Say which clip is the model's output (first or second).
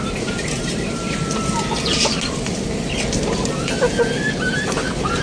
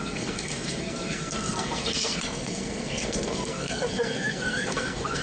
second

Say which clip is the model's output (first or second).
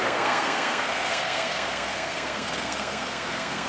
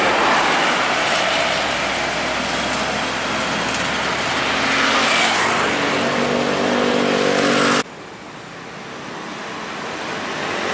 first